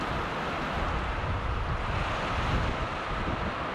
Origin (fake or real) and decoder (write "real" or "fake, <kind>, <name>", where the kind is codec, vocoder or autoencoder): real